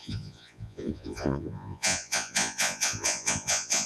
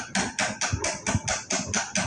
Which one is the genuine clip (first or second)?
second